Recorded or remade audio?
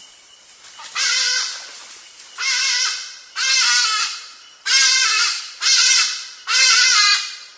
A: recorded